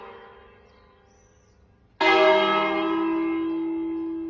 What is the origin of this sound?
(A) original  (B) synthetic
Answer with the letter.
A